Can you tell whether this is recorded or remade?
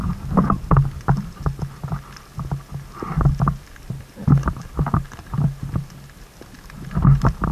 recorded